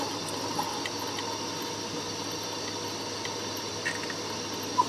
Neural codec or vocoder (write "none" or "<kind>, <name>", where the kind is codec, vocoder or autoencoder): none